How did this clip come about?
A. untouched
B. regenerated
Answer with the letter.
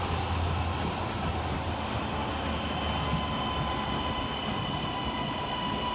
A